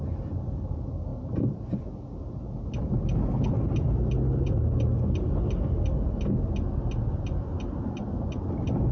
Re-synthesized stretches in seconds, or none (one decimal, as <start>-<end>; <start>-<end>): none